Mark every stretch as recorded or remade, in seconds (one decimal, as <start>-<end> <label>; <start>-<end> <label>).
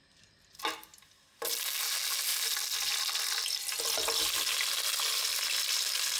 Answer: 0.0-6.2 recorded